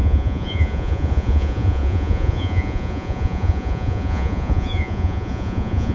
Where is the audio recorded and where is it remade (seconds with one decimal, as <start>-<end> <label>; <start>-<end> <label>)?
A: 0.0-5.9 remade